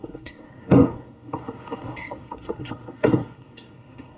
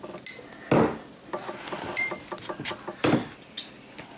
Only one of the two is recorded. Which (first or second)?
second